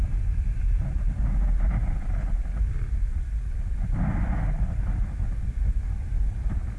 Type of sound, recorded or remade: recorded